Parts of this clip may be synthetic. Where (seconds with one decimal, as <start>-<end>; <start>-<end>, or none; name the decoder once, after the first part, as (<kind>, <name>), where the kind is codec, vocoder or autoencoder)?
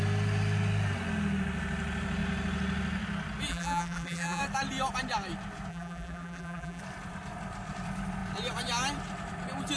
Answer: 3.5-4.4 (vocoder, BigVGAN v2); 5.7-6.8